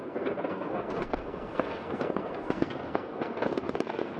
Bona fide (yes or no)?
no